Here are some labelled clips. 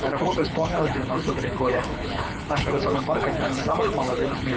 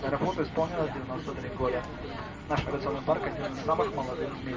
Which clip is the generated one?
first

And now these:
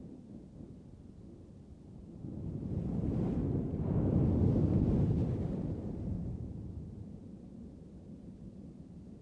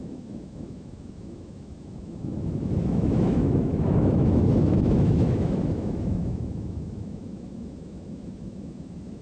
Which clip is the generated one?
second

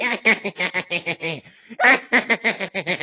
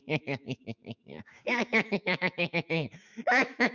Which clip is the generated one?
second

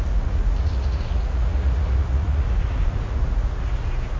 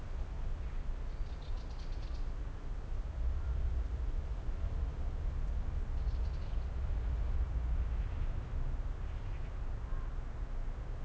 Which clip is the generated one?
first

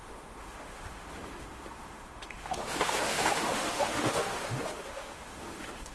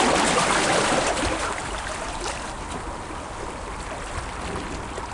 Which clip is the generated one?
first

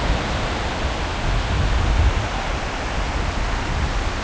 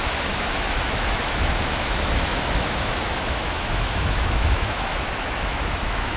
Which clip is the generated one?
second